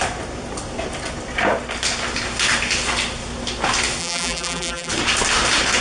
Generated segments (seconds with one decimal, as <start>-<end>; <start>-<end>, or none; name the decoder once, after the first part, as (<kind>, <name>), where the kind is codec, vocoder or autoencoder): 4.0-4.9 (vocoder, BigVGAN v2)